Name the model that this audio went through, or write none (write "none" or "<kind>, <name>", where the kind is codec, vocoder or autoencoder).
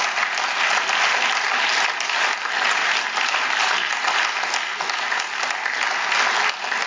none